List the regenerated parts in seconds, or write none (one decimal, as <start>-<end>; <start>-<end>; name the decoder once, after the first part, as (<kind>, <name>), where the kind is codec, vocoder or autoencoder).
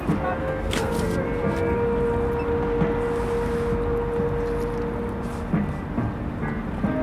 0.4-0.9 (codec, SNAC)